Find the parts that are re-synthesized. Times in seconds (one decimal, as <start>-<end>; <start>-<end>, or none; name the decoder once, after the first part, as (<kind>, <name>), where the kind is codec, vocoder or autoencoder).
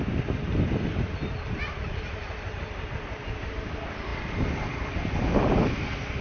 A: 4.1-4.9 (vocoder, BigVGAN v2)